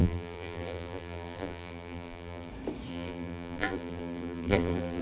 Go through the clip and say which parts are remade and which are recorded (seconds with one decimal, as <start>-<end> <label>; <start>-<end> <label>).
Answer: 0.0-2.5 remade; 2.5-2.9 recorded; 2.9-5.0 remade